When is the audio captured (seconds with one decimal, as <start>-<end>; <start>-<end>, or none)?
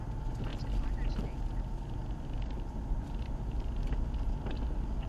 0.0-5.1